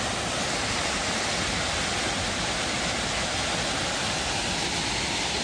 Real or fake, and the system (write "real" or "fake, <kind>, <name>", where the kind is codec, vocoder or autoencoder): real